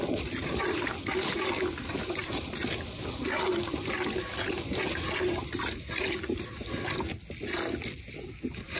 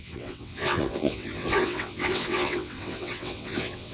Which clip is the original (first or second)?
first